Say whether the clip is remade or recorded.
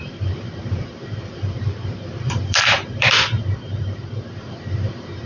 remade